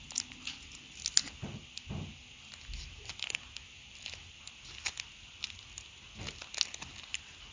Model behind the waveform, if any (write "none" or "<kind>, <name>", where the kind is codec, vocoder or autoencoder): none